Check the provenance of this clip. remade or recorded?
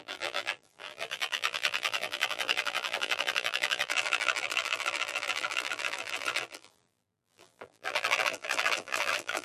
remade